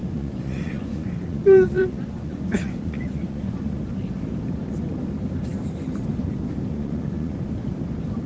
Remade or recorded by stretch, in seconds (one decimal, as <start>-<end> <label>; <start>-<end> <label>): 0.0-3.8 remade; 3.8-6.7 recorded; 6.7-7.4 remade; 7.4-8.3 recorded

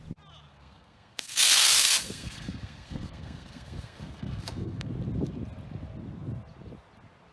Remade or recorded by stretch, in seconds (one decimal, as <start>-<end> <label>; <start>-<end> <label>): 0.0-0.5 recorded; 0.5-4.9 remade; 4.9-7.3 recorded

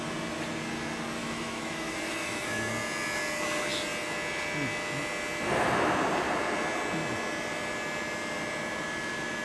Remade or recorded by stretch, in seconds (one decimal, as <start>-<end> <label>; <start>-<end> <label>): 0.0-1.2 recorded; 1.2-2.7 remade; 2.7-9.4 recorded

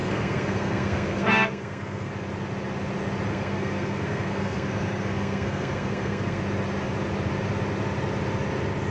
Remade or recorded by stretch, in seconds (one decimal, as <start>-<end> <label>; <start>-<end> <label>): 0.0-2.1 remade; 2.1-3.3 recorded; 3.3-6.4 remade; 6.4-8.9 recorded